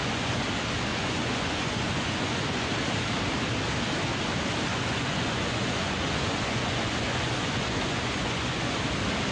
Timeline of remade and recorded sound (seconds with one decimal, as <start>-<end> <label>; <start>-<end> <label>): 0.0-0.5 remade; 0.5-0.9 recorded; 0.9-2.7 remade; 2.7-4.7 recorded; 4.7-8.8 remade; 8.8-9.3 recorded

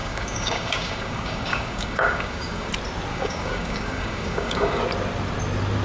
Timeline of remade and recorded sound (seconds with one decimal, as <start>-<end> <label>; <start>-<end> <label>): 0.0-2.7 remade; 2.7-3.1 recorded; 3.1-4.8 remade; 4.8-5.8 recorded